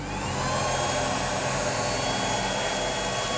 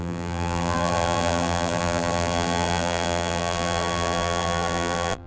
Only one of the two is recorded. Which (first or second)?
first